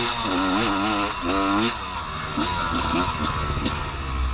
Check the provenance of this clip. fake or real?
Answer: real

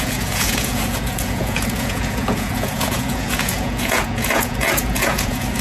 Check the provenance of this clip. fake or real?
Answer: fake